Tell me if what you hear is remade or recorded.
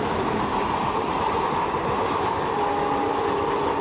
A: recorded